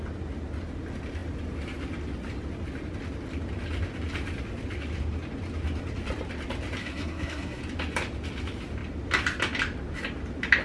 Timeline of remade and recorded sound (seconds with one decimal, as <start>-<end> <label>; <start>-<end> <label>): 0.0-6.8 recorded; 6.8-7.6 remade; 7.6-10.6 recorded